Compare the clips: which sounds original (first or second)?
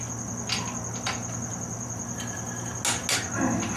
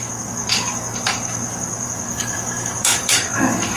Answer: first